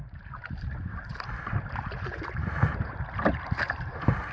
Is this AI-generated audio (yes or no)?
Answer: yes